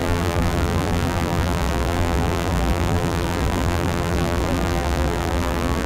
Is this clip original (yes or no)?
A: no